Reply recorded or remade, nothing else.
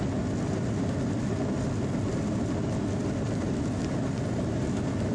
recorded